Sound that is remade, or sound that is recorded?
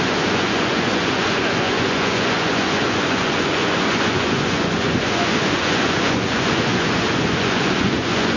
remade